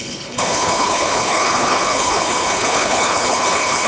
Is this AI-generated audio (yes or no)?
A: yes